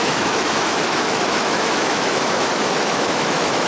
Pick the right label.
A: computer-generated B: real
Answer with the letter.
A